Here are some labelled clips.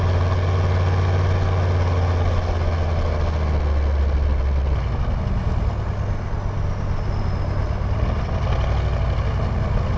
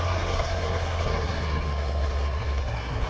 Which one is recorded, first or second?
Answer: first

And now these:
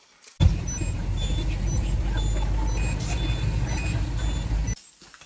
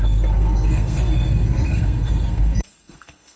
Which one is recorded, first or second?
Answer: first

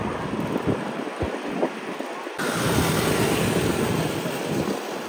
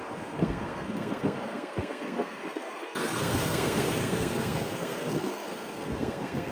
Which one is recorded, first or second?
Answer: first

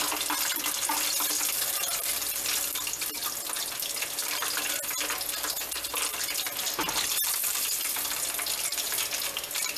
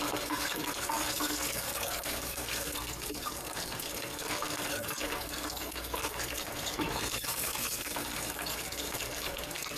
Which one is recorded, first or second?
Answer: first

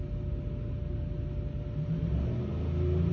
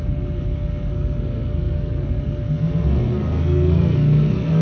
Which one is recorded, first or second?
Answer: first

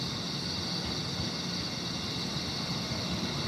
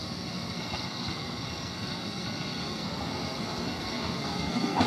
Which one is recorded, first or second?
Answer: first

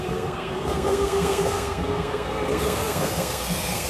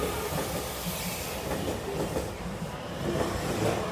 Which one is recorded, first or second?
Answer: second